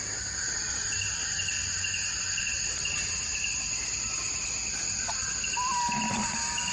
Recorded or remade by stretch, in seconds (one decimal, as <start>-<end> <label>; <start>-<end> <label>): 0.0-6.7 recorded